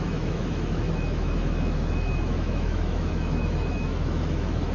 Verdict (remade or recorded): remade